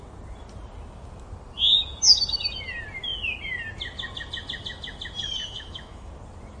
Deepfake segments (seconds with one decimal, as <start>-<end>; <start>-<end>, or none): 5.4-6.1